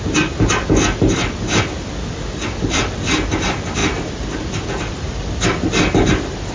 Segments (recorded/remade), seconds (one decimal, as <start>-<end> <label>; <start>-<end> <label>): 0.0-6.5 recorded